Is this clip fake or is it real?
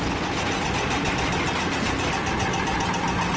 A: real